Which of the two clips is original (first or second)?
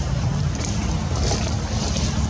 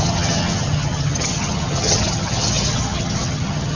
first